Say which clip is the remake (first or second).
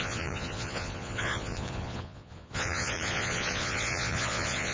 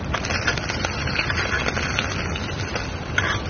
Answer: first